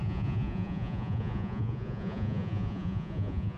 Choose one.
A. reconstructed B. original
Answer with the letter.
A